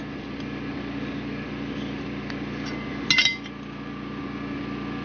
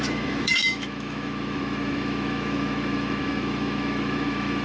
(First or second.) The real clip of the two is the first